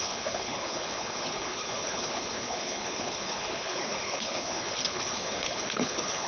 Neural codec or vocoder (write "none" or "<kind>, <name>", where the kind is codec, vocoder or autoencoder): codec, HILCodec